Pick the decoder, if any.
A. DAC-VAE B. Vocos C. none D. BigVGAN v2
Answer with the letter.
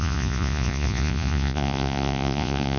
B